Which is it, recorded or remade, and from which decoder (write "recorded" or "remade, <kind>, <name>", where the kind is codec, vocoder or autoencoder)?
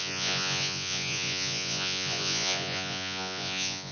remade, vocoder, Vocos